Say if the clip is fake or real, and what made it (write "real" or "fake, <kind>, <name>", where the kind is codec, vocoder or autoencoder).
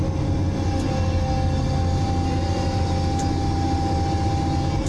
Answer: real